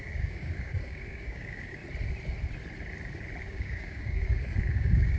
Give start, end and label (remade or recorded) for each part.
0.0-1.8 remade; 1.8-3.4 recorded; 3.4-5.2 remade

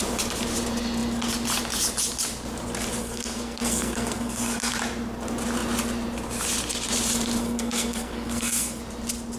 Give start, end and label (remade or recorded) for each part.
0.0-3.0 recorded; 3.0-4.7 remade; 4.7-7.4 recorded; 7.4-8.8 remade; 8.8-9.4 recorded